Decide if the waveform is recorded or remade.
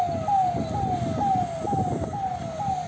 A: recorded